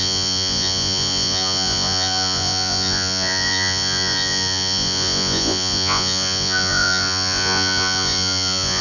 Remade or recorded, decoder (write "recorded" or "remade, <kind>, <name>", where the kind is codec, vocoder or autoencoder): remade, vocoder, Vocos